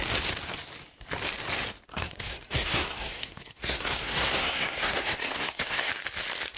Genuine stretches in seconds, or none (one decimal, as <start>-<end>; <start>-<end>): 0.0-1.9; 5.9-6.6